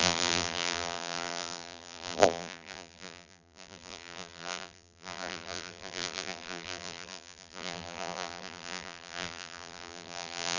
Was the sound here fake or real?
fake